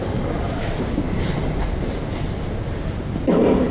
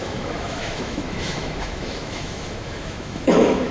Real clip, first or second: first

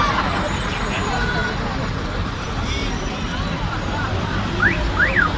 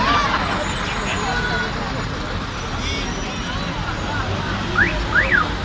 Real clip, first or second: second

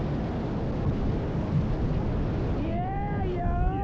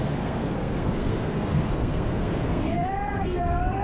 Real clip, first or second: first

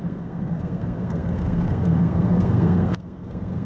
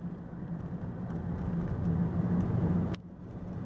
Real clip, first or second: second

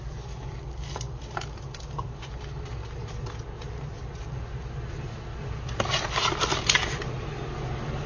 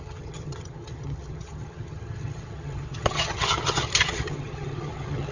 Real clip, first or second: first